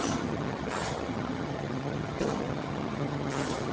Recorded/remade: remade